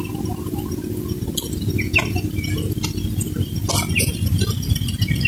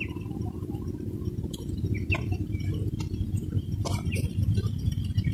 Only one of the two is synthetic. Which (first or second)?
second